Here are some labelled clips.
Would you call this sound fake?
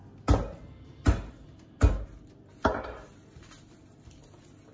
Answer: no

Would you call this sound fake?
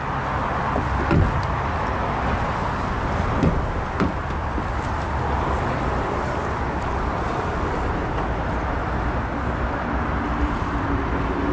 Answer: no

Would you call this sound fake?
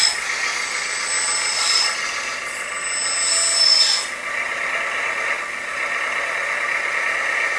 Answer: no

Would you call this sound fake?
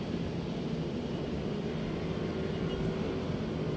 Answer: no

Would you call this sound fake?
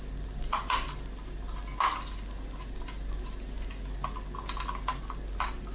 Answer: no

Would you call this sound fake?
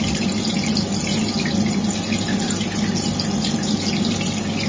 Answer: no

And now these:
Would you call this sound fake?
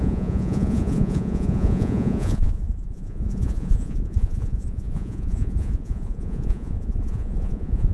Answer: yes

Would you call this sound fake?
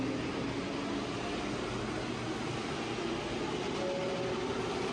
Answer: no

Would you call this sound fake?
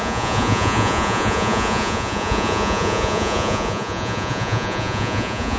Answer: yes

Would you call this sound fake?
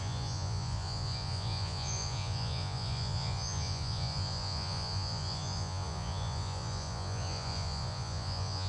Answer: yes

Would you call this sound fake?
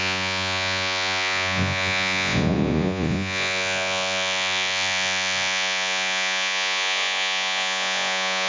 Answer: yes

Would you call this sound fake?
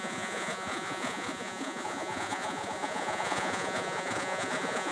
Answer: yes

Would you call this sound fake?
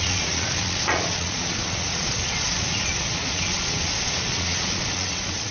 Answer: yes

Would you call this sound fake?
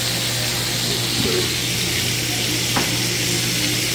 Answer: no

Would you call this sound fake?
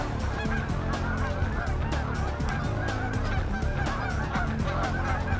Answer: no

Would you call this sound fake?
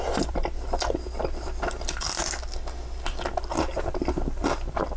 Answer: no